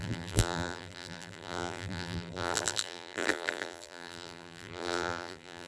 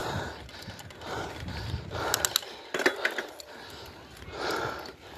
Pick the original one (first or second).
second